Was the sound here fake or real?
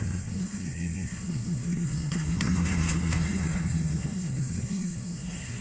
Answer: fake